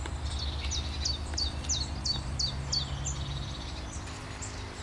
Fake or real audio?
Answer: real